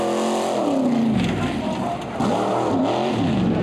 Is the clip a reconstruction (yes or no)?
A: no